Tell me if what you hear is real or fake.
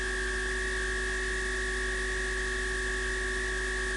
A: real